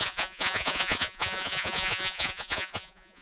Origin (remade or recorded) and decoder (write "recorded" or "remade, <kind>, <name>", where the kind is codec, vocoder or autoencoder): remade, vocoder, Vocos